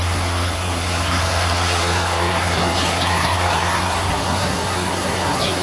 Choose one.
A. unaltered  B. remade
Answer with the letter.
B